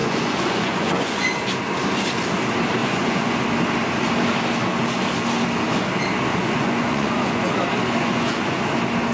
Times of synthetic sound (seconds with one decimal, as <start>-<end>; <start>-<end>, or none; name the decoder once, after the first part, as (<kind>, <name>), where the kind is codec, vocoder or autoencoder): 0.0-1.3 (vocoder, Vocos); 2.8-3.4; 6.3-7.5; 8.0-8.6